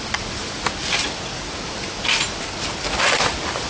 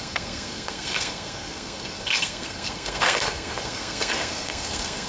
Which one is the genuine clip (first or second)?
first